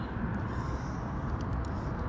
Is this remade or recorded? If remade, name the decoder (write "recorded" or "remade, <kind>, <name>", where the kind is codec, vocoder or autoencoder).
recorded